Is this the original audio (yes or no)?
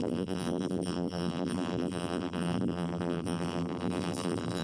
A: no